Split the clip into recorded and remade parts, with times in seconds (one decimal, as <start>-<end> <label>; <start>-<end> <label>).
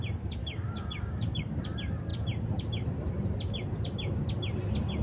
0.0-0.4 recorded; 0.4-1.6 remade; 1.6-5.0 recorded